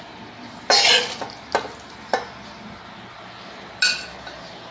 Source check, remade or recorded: recorded